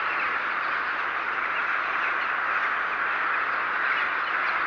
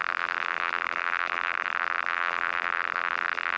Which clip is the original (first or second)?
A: first